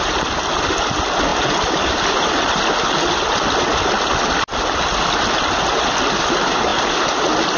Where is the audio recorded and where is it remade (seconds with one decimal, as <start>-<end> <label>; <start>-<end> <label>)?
0.0-7.6 recorded